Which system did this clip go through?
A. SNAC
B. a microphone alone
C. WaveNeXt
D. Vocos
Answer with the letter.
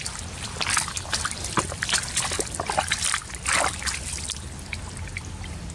B